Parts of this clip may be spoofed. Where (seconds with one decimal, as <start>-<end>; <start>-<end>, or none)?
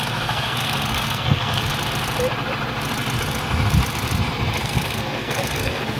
0.0-1.7; 4.6-6.0